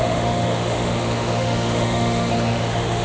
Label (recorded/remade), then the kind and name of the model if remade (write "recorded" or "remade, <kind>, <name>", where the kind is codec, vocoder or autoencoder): remade, autoencoder, DAC-VAE